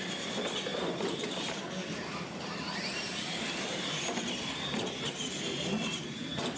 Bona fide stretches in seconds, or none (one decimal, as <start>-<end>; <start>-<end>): 0.0-0.7; 3.9-5.8